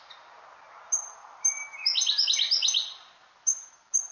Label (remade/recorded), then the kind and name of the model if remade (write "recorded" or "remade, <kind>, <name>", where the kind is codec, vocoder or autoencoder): recorded